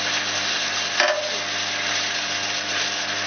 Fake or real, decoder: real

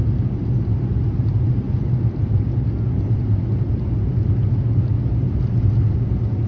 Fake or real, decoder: real